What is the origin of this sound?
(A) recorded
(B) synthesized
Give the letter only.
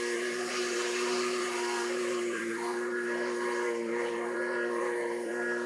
B